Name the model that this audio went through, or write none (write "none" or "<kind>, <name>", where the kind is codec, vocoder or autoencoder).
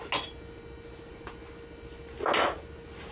none